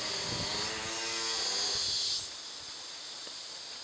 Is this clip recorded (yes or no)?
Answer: yes